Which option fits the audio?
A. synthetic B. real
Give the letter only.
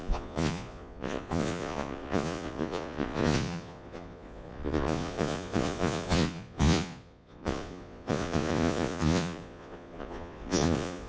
A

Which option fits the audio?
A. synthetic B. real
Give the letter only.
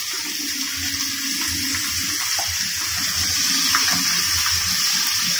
B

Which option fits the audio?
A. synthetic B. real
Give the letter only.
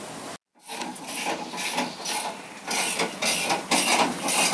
B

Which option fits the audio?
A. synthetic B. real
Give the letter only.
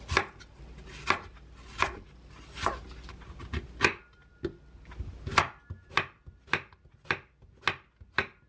B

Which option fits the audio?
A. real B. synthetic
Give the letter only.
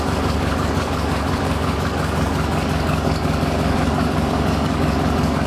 B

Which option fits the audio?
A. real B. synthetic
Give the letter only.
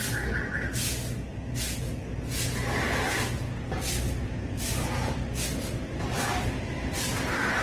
A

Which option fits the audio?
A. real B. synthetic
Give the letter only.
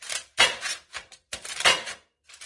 B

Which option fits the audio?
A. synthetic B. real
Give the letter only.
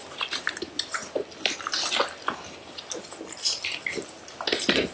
B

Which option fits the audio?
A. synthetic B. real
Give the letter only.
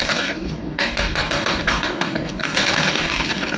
A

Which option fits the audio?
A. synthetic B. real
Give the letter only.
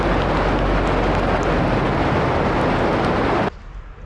B